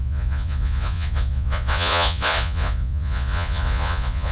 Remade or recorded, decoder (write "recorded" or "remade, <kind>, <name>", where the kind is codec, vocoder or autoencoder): remade, vocoder, Vocos